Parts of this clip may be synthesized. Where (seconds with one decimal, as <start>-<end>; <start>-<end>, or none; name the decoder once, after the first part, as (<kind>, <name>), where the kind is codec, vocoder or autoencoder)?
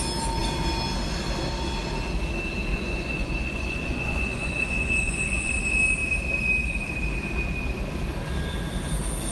2.7-5.5 (vocoder, Vocos)